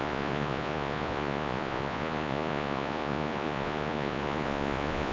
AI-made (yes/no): yes